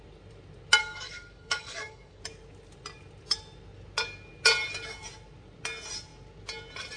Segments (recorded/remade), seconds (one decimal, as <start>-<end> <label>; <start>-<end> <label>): 0.0-0.8 recorded; 0.8-2.2 remade; 2.2-7.0 recorded